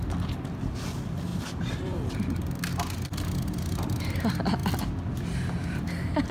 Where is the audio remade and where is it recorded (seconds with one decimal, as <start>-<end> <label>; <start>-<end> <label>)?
0.0-1.3 recorded; 1.3-2.2 remade; 2.2-6.3 recorded